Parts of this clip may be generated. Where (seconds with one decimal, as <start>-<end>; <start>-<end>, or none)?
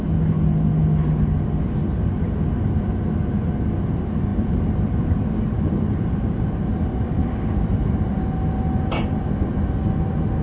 4.3-8.2